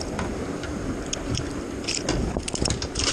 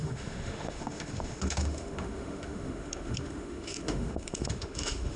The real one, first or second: first